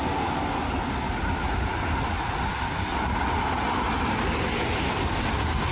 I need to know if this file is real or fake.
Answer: real